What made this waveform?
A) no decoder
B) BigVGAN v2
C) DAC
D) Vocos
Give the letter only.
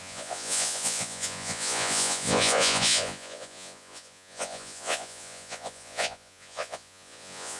D